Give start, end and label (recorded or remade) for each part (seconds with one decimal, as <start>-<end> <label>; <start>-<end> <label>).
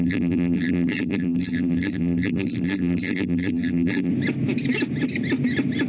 0.0-4.1 remade; 4.1-5.9 recorded